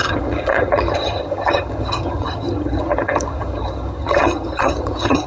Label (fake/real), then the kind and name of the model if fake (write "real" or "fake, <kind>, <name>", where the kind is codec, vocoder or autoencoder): fake, vocoder, HiFi-GAN